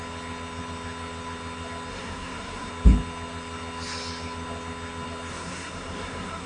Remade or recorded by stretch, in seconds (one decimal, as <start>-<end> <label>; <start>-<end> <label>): 0.0-1.9 recorded; 1.9-2.7 remade; 2.7-5.3 recorded; 5.3-6.5 remade